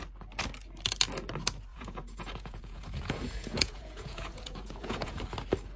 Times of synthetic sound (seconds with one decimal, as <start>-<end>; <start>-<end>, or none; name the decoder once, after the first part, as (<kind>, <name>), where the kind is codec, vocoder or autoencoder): 1.7-5.2 (vocoder, Vocos)